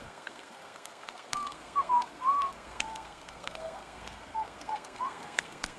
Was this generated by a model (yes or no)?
yes